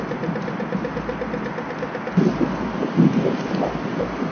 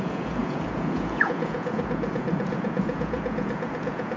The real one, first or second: first